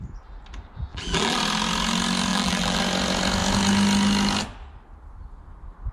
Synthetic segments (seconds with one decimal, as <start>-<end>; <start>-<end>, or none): 0.9-1.4; 2.3-2.8